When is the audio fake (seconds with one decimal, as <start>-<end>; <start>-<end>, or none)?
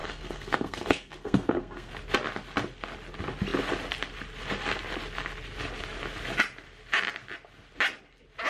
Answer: 0.0-1.9